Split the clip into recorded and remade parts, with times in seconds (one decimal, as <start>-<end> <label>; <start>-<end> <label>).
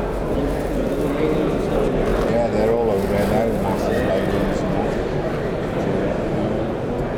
0.0-7.2 recorded